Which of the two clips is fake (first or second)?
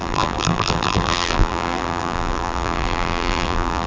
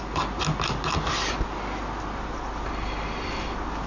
first